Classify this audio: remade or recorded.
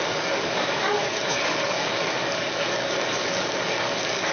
remade